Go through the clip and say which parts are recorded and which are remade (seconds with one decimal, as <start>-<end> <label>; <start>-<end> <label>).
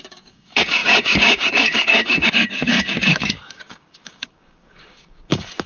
0.0-5.7 remade